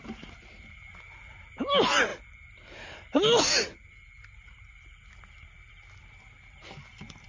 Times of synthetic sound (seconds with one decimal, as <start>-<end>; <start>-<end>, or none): none